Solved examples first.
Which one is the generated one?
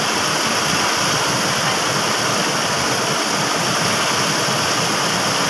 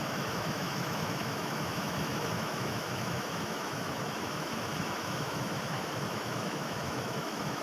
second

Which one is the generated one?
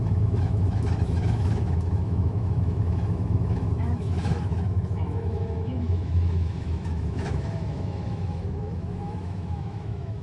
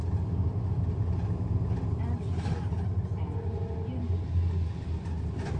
first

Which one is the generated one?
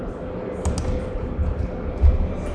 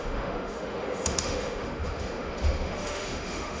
second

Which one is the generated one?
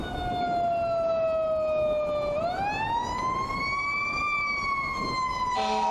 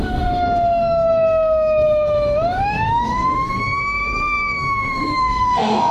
second